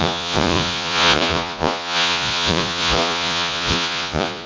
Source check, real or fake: fake